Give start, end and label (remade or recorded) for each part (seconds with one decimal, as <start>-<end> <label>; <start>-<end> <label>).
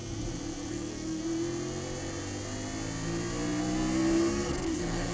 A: 0.0-0.7 recorded; 0.7-1.2 remade; 1.2-4.3 recorded; 4.3-5.1 remade